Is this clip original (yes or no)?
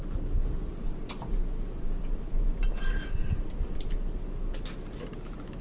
yes